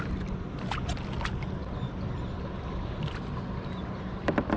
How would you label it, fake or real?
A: real